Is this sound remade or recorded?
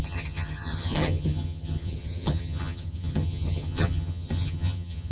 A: remade